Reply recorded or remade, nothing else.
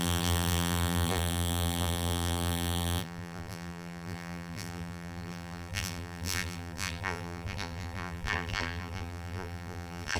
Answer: remade